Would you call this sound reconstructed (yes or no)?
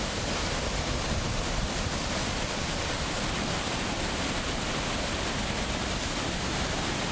yes